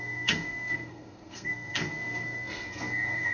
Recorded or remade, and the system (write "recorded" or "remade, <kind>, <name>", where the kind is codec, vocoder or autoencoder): remade, codec, SNAC